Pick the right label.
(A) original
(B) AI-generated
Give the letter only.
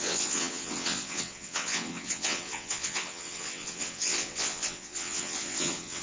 B